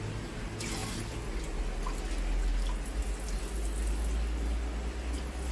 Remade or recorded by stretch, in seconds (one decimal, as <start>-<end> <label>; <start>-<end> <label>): 0.0-5.5 recorded